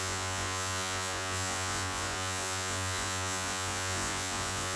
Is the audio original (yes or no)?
no